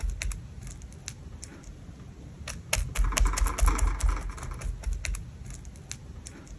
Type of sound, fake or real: real